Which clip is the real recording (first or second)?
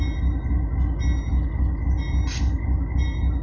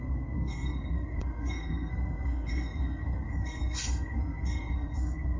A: first